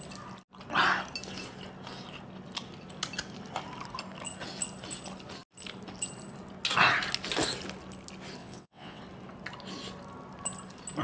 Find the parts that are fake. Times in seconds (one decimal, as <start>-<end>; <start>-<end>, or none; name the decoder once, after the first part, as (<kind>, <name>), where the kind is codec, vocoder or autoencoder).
8.4-9.0 (vocoder, WaveNeXt)

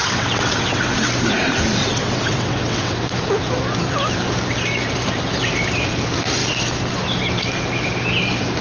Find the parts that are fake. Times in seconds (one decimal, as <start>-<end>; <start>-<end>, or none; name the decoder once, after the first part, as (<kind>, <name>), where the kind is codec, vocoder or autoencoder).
0.0-1.1 (vocoder, WaveNeXt); 1.8-3.0

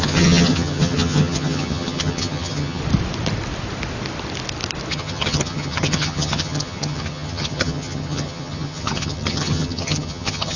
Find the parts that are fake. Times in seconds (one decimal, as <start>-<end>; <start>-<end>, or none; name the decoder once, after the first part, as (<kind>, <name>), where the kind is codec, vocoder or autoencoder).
0.0-2.8 (vocoder, HiFi-GAN); 4.9-10.6